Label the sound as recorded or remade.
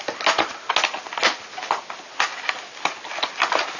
recorded